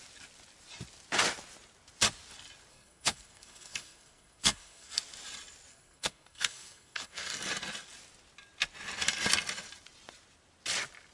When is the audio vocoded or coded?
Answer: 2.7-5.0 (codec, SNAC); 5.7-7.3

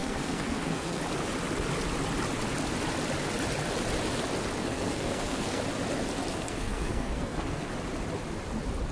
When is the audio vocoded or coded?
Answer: 0.0-1.0 (codec, SNAC); 4.6-5.6; 6.3-7.7

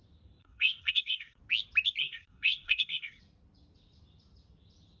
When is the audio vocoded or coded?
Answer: 0.4-1.4 (codec, SNAC); 2.0-3.2

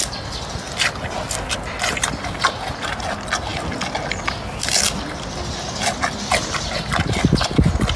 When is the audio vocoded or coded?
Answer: none

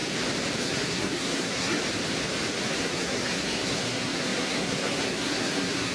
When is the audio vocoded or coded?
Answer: 0.6-1.8 (codec, SNAC); 2.7-5.9

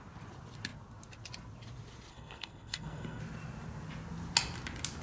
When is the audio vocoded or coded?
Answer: 2.1-3.2 (codec, SNAC)